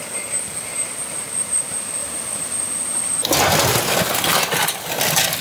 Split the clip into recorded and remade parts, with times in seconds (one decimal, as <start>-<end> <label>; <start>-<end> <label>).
0.0-2.0 recorded; 2.0-3.6 remade; 3.6-5.4 recorded